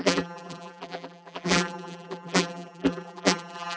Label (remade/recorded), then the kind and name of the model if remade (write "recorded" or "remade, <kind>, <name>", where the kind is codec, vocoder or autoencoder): remade, vocoder, BigVGAN v2